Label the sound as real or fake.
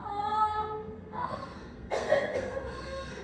fake